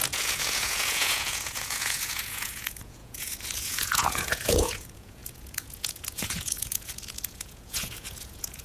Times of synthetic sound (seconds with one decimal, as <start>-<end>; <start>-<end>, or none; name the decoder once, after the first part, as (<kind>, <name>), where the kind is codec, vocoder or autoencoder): 0.0-8.6 (vocoder, Vocos)